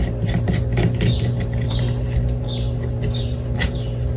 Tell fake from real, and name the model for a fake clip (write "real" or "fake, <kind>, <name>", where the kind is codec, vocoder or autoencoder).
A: fake, vocoder, BigVGAN v2